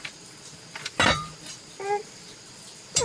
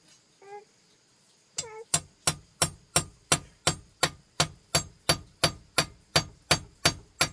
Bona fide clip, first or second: second